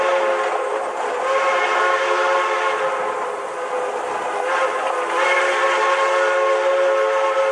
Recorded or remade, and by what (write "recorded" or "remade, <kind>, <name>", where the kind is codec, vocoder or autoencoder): recorded